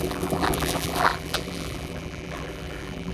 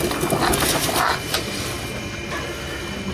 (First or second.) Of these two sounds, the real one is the second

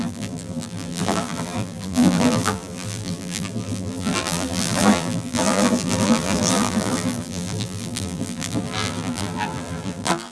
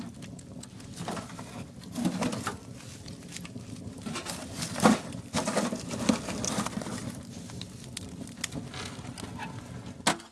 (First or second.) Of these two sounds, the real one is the second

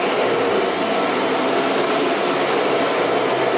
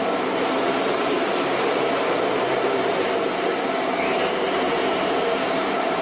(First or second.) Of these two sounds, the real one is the first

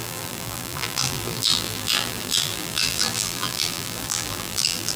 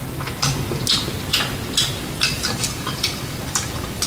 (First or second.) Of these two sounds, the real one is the second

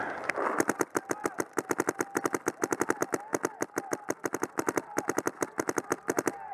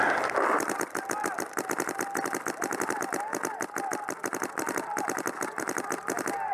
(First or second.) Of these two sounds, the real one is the first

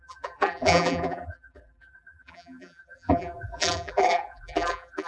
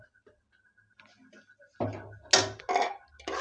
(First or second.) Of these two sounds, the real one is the second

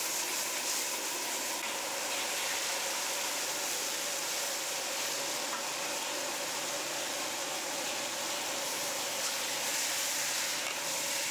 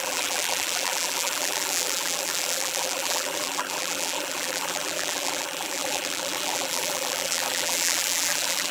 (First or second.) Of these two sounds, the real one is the first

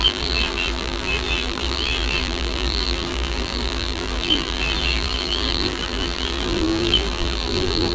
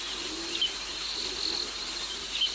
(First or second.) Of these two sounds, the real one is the second